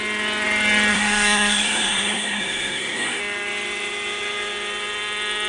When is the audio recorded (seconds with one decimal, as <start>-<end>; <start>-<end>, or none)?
0.0-0.9; 3.2-5.5